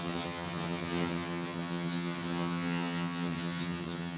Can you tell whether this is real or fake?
fake